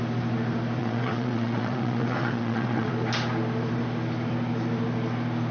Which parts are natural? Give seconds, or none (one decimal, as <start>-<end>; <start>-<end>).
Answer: 0.0-0.8; 2.9-5.5